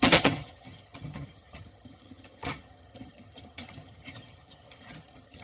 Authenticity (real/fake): fake